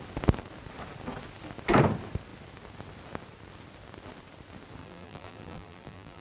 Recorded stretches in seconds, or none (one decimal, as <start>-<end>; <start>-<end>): 0.0-4.8